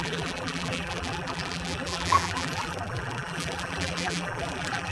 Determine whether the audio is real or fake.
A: fake